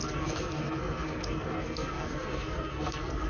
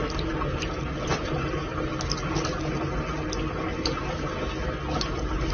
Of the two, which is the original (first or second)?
second